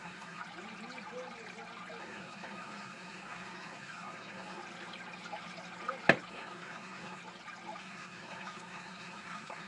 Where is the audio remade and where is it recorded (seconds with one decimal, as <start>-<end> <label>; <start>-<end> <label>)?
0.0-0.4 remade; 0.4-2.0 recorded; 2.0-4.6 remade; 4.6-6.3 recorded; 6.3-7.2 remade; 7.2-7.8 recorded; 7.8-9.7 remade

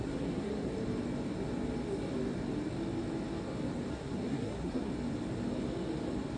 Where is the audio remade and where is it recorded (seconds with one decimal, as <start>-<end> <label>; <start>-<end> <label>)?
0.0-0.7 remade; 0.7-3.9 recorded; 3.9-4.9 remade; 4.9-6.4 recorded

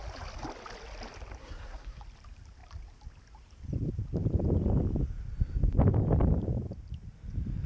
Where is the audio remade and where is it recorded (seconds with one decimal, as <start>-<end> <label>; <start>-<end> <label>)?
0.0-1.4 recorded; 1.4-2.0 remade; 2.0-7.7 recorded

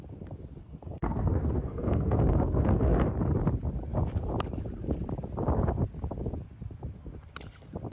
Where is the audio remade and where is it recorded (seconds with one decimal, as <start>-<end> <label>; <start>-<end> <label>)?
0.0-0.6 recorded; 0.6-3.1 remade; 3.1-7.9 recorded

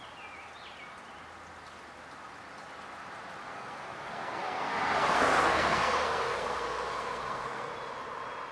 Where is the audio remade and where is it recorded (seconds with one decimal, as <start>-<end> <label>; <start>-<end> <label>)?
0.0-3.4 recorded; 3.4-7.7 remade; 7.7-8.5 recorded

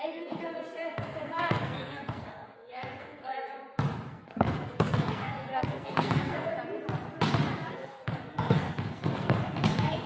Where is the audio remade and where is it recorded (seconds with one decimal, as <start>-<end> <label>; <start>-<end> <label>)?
0.0-3.5 remade; 3.5-4.1 recorded; 4.1-6.5 remade; 6.5-7.7 recorded; 7.7-10.1 remade